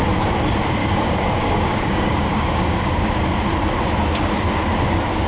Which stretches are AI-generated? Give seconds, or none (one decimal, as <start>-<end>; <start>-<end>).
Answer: 0.8-3.1